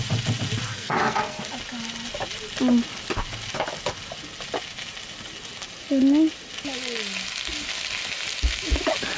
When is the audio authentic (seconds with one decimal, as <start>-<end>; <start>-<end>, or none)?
0.0-0.7; 1.5-9.2